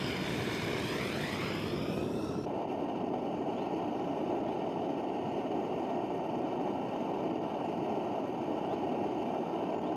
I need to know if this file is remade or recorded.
recorded